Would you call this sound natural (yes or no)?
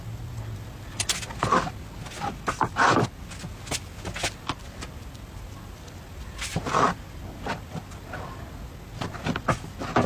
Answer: yes